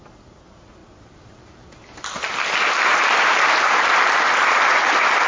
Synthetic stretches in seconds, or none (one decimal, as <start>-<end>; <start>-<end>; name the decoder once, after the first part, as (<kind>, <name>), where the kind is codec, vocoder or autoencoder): none